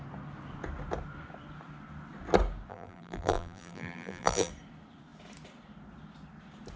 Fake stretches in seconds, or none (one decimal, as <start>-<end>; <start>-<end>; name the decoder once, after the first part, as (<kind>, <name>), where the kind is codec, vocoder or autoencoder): 2.7-4.5 (vocoder, BigVGAN v2)